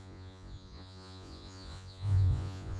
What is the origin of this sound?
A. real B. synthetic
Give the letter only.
B